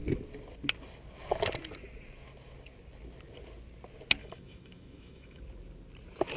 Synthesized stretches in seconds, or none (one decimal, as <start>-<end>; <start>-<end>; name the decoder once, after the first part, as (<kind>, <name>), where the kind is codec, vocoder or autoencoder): 4.2-5.4 (autoencoder, DAC-VAE)